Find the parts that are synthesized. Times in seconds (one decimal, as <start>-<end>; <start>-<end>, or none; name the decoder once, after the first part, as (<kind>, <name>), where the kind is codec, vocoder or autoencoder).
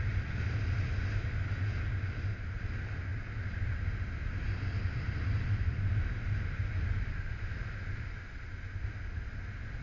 none